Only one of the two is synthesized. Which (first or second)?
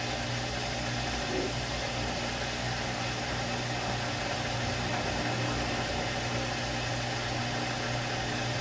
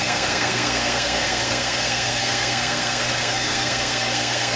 second